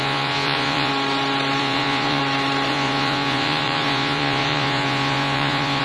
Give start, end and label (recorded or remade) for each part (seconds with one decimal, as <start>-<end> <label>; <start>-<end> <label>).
0.0-0.9 remade; 0.9-1.6 recorded; 1.6-2.2 remade; 2.2-2.7 recorded; 2.7-5.8 remade

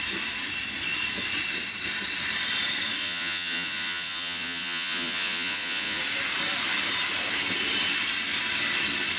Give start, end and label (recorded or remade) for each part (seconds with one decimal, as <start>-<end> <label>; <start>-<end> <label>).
0.0-3.0 recorded; 3.0-6.0 remade; 6.0-9.2 recorded